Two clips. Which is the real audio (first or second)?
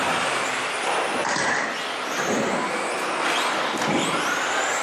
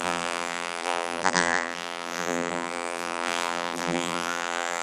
first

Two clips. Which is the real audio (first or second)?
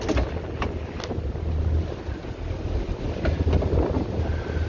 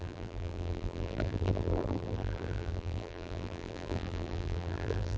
first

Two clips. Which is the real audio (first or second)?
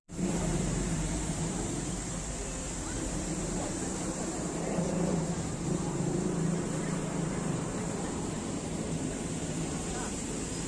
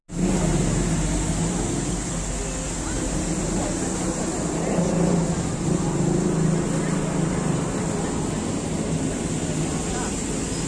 second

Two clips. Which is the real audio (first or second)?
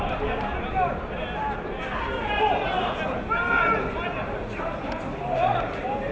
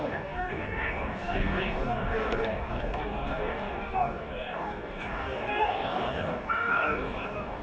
first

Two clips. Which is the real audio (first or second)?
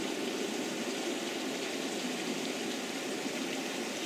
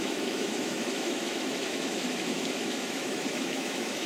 first